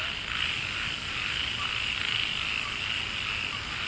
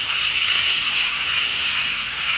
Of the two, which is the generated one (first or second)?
second